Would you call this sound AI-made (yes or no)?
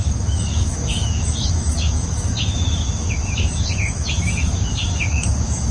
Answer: yes